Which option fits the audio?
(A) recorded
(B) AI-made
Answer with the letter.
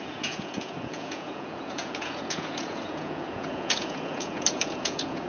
B